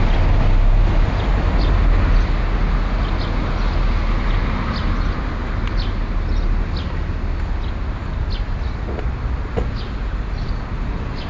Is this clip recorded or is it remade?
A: recorded